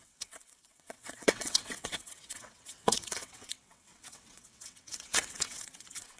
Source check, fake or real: fake